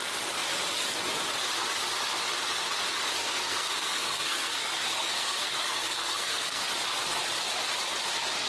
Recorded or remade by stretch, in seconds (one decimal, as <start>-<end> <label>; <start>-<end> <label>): 0.0-3.2 recorded; 3.2-6.7 remade; 6.7-8.5 recorded

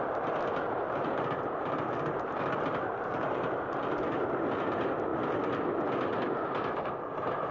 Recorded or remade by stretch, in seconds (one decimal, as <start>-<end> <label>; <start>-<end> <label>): 0.0-7.5 recorded